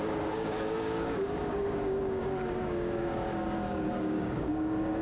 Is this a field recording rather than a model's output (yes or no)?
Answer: no